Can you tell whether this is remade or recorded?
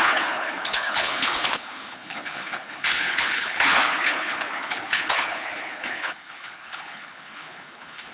remade